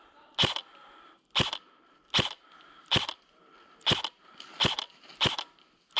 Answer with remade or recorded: recorded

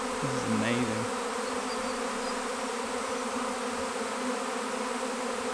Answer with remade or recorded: recorded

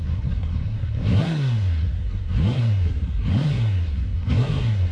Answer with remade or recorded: remade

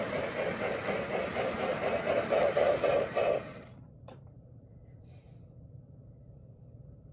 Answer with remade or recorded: remade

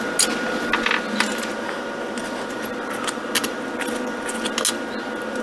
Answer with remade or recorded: recorded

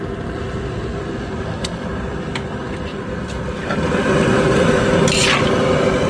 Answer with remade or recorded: recorded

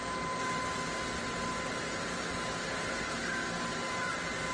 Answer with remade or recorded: recorded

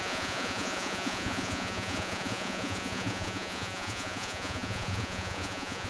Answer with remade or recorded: remade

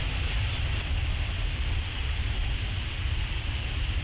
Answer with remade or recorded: remade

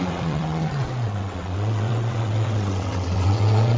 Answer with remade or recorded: remade